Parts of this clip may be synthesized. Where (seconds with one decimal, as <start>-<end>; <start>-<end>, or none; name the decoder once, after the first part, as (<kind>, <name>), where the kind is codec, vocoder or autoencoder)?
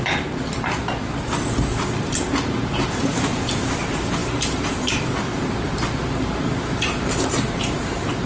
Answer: 0.0-0.8 (vocoder, BigVGAN v2); 3.5-8.3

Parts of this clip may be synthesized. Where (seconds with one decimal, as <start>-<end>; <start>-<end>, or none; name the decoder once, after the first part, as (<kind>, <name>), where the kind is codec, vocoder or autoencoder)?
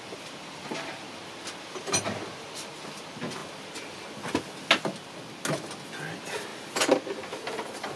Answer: none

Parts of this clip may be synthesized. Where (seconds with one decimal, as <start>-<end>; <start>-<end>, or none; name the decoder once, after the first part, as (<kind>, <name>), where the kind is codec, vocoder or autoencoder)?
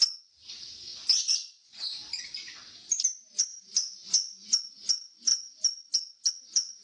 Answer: 0.9-2.2 (vocoder, BigVGAN v2); 3.5-4.6; 5.3-6.3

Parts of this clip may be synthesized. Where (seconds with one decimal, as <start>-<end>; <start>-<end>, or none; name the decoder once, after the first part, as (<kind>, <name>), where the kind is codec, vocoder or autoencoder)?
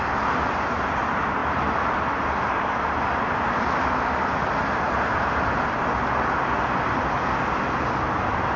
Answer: none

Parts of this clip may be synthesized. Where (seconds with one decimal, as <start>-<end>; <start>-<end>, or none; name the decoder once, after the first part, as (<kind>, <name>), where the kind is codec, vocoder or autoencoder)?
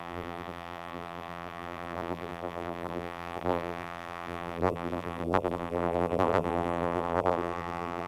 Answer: 0.0-8.1 (vocoder, BigVGAN v2)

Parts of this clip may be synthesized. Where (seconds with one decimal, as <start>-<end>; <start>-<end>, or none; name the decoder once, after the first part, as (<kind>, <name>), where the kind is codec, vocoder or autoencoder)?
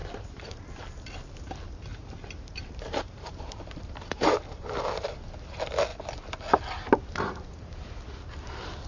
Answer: 0.0-0.8 (vocoder, BigVGAN v2); 1.9-4.8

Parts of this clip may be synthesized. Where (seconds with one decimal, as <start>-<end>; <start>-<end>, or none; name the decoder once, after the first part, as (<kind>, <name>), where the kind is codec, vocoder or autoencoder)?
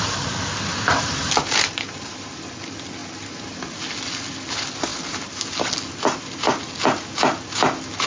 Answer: 0.7-2.1 (vocoder, BigVGAN v2)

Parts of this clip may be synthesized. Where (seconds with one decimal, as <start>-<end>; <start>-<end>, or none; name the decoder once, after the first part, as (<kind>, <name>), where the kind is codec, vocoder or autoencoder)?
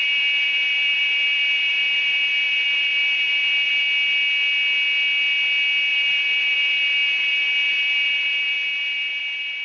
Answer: 0.0-3.8 (vocoder, BigVGAN v2); 5.9-9.6